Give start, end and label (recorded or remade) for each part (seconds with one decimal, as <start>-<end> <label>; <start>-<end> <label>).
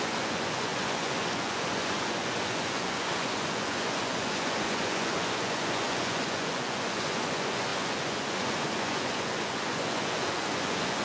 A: 0.0-11.0 remade